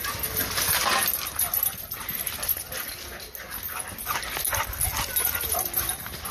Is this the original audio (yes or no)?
yes